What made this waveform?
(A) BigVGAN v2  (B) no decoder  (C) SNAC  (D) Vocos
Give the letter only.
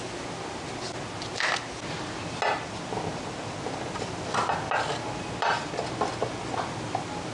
B